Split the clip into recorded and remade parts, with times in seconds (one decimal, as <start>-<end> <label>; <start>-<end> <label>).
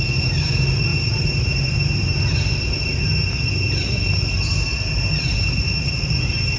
0.0-0.9 recorded; 0.9-2.5 remade; 2.5-6.6 recorded